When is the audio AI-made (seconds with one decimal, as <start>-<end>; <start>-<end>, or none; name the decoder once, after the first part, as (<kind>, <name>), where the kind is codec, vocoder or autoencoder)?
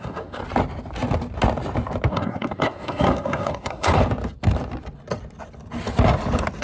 0.0-0.4 (codec, SNAC); 2.1-4.0